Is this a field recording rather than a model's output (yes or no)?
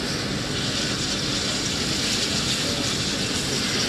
yes